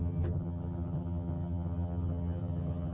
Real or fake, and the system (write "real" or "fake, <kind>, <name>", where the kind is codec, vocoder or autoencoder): fake, vocoder, HiFi-GAN